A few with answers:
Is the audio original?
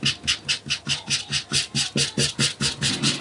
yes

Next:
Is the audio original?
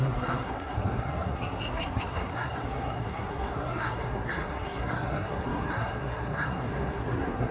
no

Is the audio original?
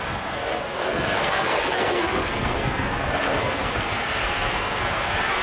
no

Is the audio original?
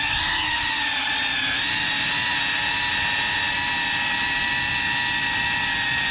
yes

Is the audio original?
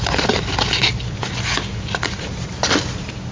yes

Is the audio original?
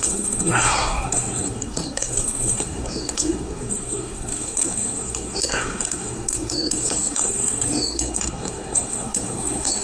no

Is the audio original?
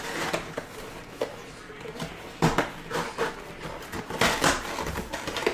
yes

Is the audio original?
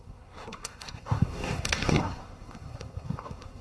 no